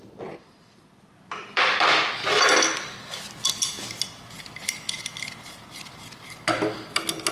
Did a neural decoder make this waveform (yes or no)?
no